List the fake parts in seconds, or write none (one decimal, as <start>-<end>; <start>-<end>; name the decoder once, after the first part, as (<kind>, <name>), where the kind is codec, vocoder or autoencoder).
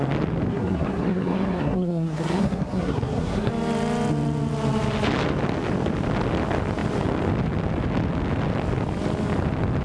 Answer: 0.5-3.5 (codec, SNAC)